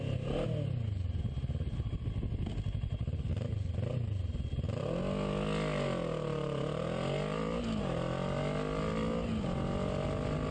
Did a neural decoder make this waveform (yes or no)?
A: no